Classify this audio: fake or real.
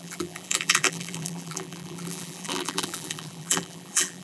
fake